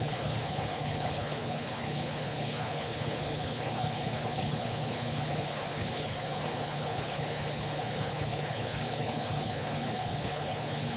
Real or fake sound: fake